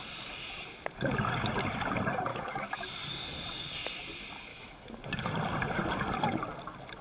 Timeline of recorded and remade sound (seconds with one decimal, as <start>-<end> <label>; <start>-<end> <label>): 0.0-2.3 recorded; 2.3-2.9 remade; 2.9-4.5 recorded; 4.5-5.0 remade; 5.0-7.0 recorded